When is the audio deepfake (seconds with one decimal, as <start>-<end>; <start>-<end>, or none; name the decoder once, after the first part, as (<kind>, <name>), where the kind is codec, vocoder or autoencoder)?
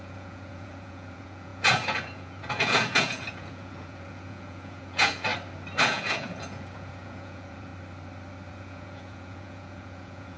0.0-5.3 (vocoder, Vocos); 5.8-7.7; 8.5-10.4